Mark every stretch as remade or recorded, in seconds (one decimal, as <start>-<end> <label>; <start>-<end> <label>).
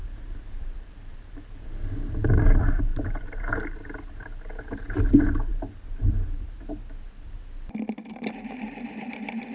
0.0-2.3 remade; 2.3-2.9 recorded; 2.9-3.5 remade; 3.5-5.5 recorded; 5.5-6.1 remade; 6.1-9.5 recorded